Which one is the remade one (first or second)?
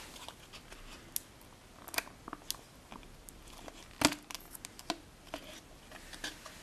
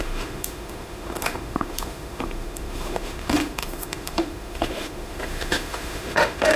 second